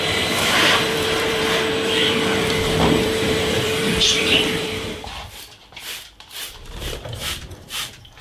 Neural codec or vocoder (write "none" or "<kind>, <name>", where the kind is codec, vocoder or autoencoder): vocoder, BigVGAN v2